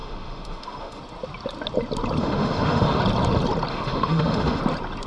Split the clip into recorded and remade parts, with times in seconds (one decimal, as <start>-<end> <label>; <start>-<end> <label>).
0.0-1.0 remade; 1.0-2.2 recorded; 2.2-3.0 remade; 3.0-3.7 recorded; 3.7-4.6 remade; 4.6-5.1 recorded